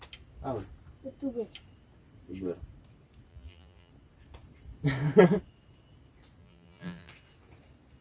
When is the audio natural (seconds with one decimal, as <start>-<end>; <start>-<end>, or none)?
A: 0.0-3.3; 3.9-6.4; 7.1-8.0